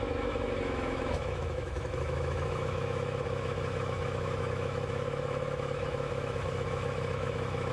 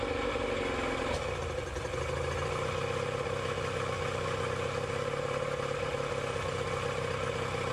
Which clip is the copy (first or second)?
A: first